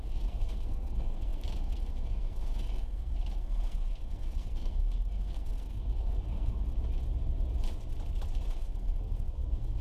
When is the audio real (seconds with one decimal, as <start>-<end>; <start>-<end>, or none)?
6.6-8.5